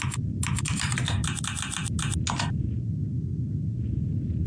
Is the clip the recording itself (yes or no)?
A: yes